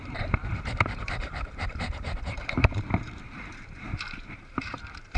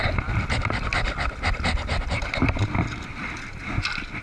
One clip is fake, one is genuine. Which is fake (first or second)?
first